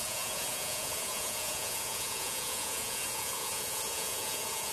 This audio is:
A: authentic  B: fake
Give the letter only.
B